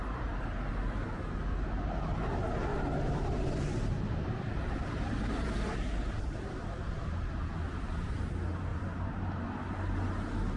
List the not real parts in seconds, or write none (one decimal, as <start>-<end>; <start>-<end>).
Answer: 0.0-0.7; 2.7-7.4; 8.7-9.4